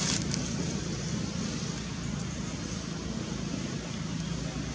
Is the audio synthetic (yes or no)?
no